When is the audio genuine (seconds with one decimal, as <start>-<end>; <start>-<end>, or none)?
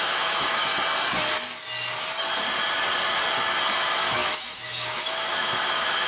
0.7-3.8